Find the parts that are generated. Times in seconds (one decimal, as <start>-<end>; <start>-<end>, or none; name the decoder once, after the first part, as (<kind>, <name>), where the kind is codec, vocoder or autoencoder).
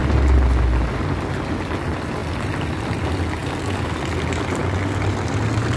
none